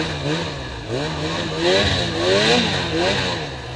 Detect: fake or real real